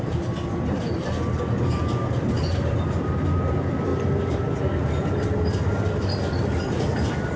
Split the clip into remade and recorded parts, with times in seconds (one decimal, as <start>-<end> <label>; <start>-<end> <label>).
0.0-7.4 recorded